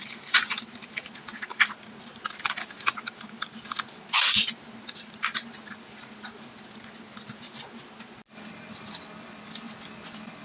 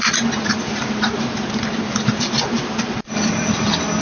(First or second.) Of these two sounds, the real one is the first